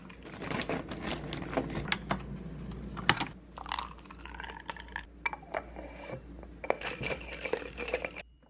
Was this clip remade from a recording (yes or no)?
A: no